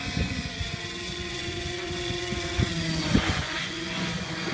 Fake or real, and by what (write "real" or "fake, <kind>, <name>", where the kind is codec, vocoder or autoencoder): fake, vocoder, Vocos